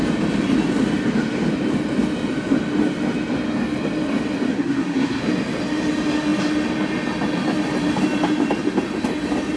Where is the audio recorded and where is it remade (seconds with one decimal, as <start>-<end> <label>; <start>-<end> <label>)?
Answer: 0.0-4.5 recorded; 4.5-5.2 remade; 5.2-9.6 recorded